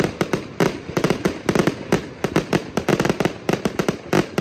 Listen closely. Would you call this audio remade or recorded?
recorded